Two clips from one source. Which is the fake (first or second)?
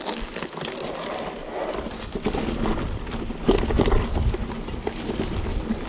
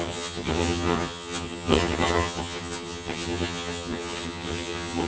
second